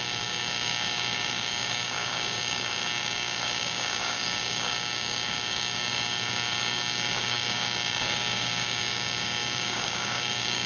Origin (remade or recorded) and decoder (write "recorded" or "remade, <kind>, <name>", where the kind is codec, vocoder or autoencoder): remade, codec, DAC